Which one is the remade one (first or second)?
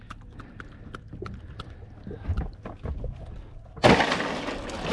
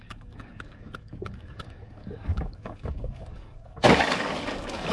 second